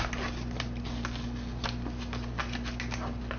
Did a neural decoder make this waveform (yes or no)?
no